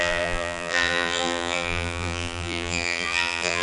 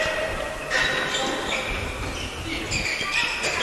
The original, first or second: second